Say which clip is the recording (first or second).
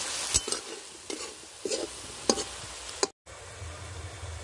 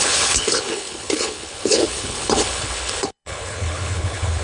first